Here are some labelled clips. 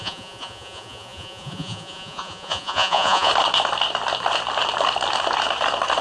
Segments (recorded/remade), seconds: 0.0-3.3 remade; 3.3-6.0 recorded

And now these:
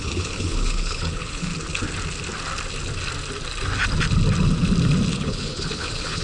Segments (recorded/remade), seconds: 0.0-1.5 remade; 1.5-5.1 recorded; 5.1-6.2 remade

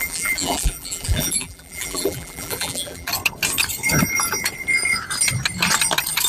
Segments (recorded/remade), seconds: 0.0-3.1 remade; 3.1-6.3 recorded

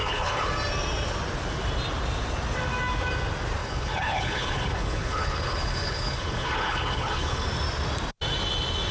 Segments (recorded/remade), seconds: 0.0-0.5 remade; 0.5-3.6 recorded; 3.6-7.5 remade; 7.5-8.9 recorded

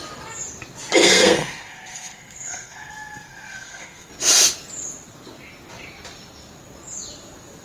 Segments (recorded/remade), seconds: 0.0-1.0 recorded; 1.0-4.1 remade; 4.1-7.6 recorded

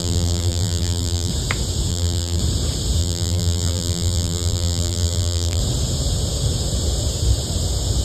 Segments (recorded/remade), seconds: 0.0-1.3 remade; 1.3-1.9 recorded; 1.9-2.4 remade; 2.4-3.0 recorded; 3.0-5.6 remade; 5.6-8.0 recorded

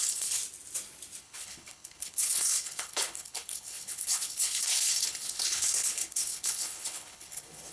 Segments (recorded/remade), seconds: 0.0-0.4 remade; 0.4-1.2 recorded; 1.2-7.7 remade